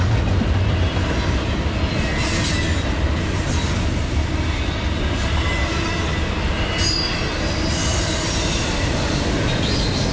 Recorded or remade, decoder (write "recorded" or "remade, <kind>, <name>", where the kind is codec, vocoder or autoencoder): recorded